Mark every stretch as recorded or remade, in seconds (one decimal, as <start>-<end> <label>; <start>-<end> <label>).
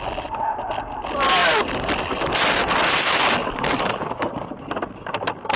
0.0-3.4 recorded; 3.4-4.3 remade; 4.3-5.6 recorded